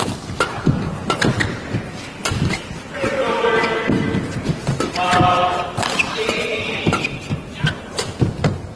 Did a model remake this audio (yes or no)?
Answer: no